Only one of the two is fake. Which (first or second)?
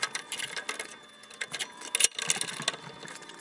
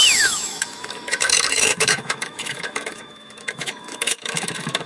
second